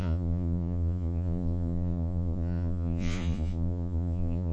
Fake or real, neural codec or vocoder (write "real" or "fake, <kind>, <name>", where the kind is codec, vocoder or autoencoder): fake, vocoder, Vocos